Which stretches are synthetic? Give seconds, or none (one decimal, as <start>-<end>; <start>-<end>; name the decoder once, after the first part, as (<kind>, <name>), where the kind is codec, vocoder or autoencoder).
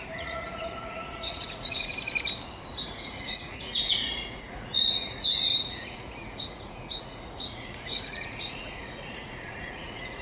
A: 0.0-1.9 (vocoder, Vocos); 2.8-10.2